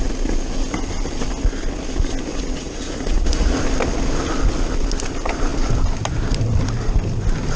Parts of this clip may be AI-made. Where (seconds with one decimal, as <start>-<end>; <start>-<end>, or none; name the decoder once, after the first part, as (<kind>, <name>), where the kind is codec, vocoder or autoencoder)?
2.3-3.6 (vocoder, Vocos)